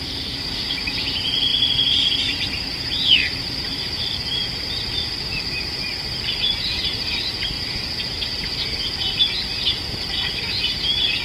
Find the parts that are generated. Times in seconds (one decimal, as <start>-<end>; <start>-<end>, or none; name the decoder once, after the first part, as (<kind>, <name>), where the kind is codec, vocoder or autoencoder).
0.0-1.5 (vocoder, BigVGAN v2); 2.2-4.4; 6.0-11.2